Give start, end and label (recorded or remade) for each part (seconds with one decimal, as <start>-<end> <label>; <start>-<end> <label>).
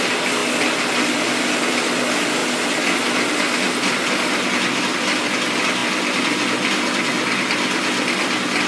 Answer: 0.0-8.7 recorded